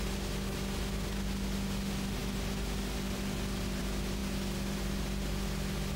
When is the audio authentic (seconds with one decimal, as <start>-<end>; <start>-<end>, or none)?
0.0-6.0